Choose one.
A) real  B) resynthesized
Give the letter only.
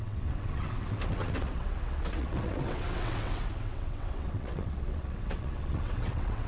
B